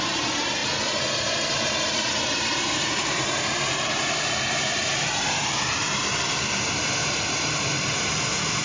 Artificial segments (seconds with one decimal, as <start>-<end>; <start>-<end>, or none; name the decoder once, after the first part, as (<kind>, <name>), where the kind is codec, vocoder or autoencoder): 0.0-0.6 (vocoder, BigVGAN v2); 1.1-8.6